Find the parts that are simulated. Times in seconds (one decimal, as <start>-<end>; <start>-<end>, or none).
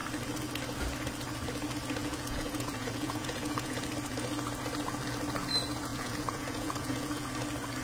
2.0-3.8; 5.9-7.3